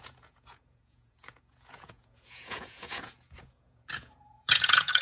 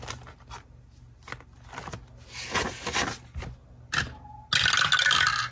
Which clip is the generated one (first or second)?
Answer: first